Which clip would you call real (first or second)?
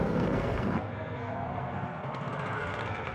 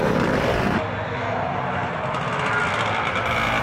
second